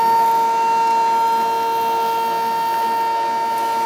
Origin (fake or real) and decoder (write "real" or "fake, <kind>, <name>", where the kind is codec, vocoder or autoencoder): real